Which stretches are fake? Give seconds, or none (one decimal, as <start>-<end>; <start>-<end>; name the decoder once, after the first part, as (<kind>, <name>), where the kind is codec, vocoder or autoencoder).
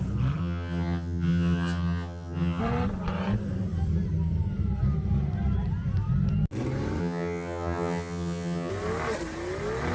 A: 0.4-2.6 (vocoder, HiFi-GAN); 7.0-8.7